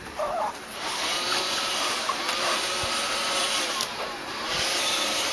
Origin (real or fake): fake